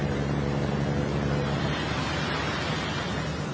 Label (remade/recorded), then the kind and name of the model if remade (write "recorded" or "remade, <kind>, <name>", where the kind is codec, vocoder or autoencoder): remade, vocoder, BigVGAN v2